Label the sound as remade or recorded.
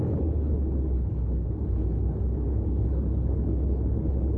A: remade